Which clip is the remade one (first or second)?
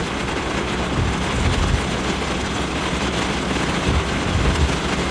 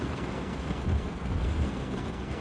second